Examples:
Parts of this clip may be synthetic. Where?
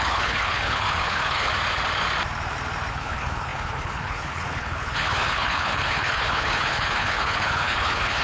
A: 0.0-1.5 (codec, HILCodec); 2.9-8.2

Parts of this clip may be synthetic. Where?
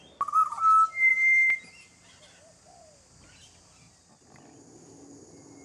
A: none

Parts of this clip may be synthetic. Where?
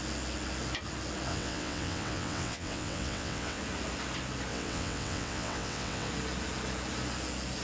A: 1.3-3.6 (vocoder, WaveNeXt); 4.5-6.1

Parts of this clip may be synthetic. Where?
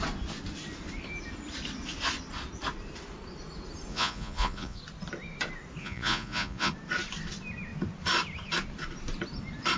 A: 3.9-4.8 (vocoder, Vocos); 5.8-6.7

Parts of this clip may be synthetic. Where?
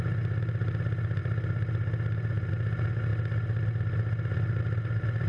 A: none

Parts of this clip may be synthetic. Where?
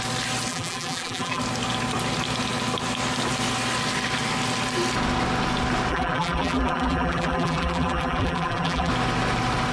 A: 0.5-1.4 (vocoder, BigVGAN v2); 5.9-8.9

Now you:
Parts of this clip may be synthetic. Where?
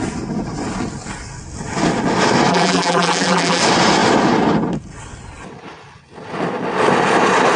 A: 2.5-3.6 (vocoder, BigVGAN v2)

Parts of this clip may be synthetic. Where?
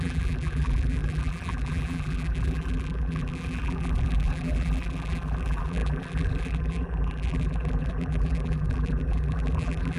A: 0.0-10.0 (vocoder, BigVGAN v2)